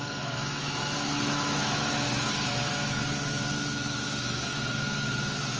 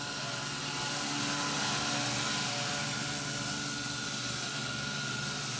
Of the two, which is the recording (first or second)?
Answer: second